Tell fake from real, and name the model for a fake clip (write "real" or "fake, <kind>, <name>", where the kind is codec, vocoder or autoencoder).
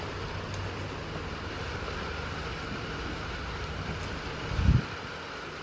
real